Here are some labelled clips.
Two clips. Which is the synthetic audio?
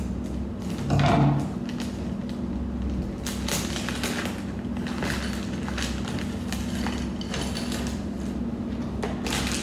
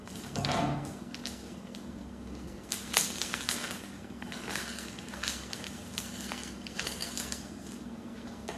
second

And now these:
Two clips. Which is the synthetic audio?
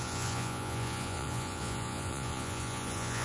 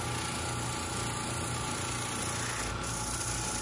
first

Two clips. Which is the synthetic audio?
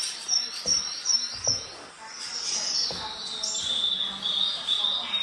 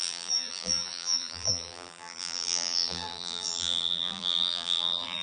second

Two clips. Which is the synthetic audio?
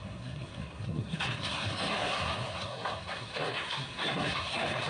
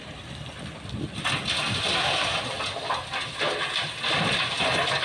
first